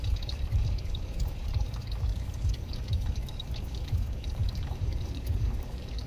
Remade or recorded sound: remade